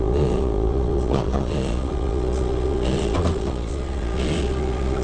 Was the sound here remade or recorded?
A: remade